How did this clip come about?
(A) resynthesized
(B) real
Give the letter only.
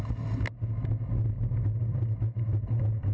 B